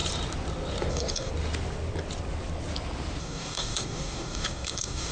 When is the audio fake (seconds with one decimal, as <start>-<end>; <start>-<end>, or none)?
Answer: 0.9-1.3; 3.2-5.1

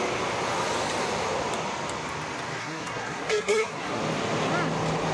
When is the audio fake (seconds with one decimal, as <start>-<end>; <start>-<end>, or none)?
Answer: 2.6-4.0

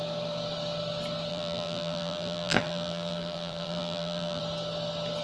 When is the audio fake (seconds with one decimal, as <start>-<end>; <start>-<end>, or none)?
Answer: 1.3-4.4

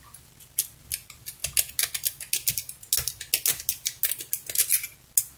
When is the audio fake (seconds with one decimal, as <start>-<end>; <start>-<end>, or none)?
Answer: none

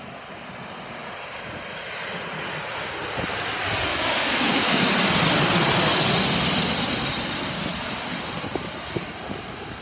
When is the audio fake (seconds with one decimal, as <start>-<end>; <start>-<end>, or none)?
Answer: 3.9-4.9

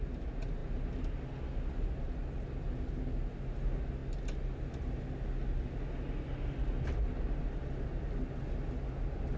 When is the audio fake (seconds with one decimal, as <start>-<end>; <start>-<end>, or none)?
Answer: none

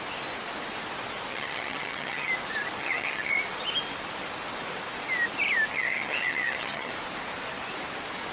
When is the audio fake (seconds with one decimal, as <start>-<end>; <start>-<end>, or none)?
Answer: 1.3-2.3; 2.8-3.3; 5.7-6.9